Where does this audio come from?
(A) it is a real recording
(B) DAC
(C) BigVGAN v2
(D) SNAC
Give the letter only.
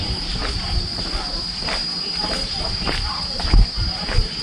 C